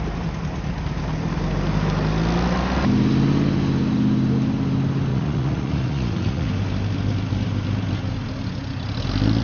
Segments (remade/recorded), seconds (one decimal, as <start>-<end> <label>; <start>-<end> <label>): 0.0-5.1 recorded; 5.1-6.5 remade; 6.5-9.4 recorded